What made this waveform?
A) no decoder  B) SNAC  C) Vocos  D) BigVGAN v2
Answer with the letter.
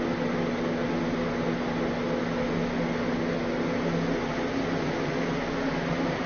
A